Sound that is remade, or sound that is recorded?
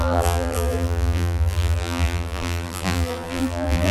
remade